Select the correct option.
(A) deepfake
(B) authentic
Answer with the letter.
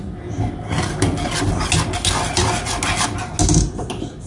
B